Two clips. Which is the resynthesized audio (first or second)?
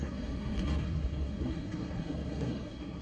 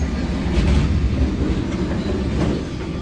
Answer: first